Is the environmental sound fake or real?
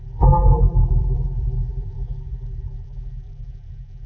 fake